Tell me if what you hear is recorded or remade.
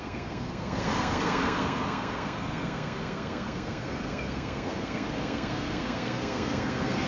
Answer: remade